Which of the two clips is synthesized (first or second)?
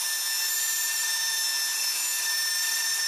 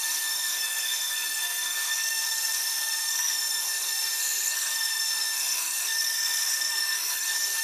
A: second